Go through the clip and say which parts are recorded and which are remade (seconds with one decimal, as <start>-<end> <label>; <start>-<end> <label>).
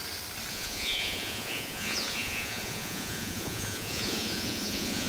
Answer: 0.0-0.5 recorded; 0.5-5.1 remade